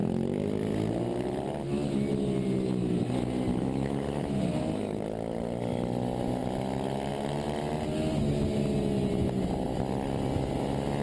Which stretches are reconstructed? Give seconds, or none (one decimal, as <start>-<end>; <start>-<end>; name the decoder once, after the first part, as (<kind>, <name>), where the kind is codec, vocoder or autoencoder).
3.5-4.4 (autoencoder, DAC-VAE)